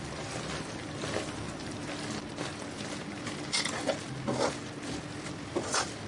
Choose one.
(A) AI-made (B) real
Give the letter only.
B